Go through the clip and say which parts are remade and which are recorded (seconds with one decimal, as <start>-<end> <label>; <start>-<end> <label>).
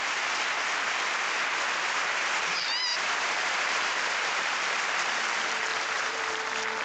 0.0-2.9 recorded; 2.9-4.6 remade; 4.6-5.7 recorded; 5.7-6.2 remade; 6.2-6.8 recorded